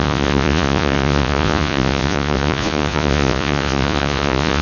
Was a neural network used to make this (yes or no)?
yes